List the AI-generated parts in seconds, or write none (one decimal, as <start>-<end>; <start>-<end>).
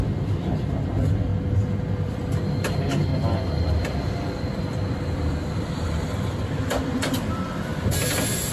0.0-1.3; 1.9-7.7